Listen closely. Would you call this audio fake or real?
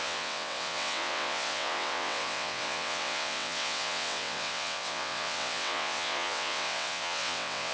fake